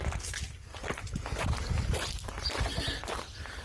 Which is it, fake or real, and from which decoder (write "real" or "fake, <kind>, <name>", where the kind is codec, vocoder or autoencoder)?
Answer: real